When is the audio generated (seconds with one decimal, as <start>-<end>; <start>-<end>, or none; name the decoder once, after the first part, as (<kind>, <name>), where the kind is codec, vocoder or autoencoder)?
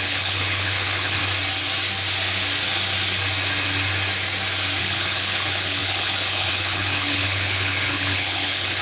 0.0-1.2 (codec, HILCodec); 4.8-8.8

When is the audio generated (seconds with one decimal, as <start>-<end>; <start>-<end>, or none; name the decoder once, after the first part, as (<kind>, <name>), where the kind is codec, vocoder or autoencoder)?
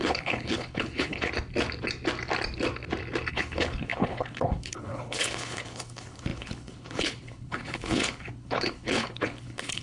0.0-1.3 (codec, HILCodec); 3.3-9.8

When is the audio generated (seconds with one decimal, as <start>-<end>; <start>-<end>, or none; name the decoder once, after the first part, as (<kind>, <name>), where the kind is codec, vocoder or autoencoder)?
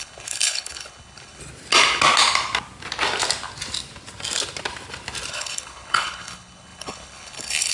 0.0-1.4 (codec, HILCodec); 5.3-7.7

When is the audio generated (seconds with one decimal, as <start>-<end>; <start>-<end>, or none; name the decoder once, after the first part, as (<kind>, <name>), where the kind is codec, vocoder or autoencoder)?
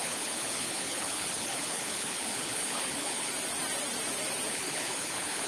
0.0-3.3 (codec, HILCodec); 4.5-5.5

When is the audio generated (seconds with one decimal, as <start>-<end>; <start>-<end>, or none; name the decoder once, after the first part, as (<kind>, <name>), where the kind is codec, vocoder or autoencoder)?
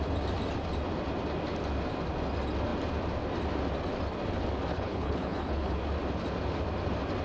4.7-5.8 (codec, HILCodec)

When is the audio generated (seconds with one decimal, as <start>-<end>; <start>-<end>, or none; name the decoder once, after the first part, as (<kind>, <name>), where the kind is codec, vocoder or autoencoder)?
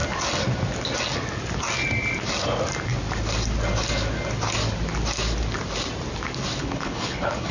6.6-7.5 (codec, HILCodec)